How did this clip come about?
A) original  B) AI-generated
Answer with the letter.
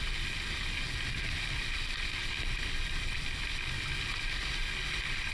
A